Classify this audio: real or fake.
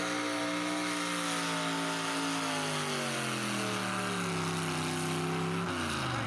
real